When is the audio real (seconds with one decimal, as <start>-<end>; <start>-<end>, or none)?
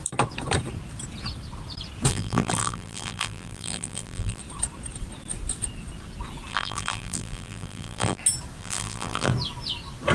0.0-2.1; 4.4-6.5; 8.2-8.6; 9.3-10.1